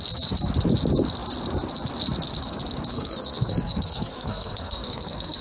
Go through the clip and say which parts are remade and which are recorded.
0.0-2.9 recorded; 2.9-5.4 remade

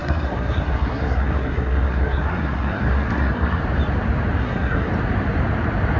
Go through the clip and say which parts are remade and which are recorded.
0.0-3.6 remade; 3.6-4.4 recorded; 4.4-4.9 remade; 4.9-6.0 recorded

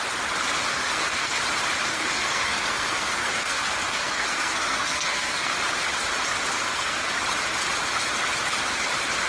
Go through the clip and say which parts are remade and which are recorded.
0.0-0.7 recorded; 0.7-1.4 remade; 1.4-1.9 recorded; 1.9-5.5 remade; 5.5-6.5 recorded; 6.5-7.1 remade; 7.1-9.3 recorded